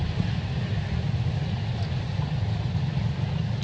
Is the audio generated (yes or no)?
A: no